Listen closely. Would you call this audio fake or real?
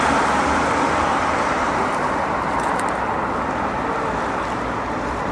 real